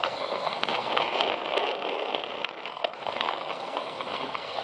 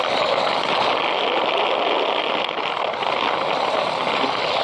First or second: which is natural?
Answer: second